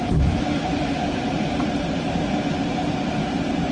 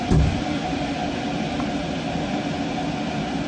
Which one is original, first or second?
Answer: second